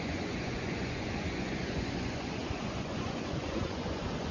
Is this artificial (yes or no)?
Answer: yes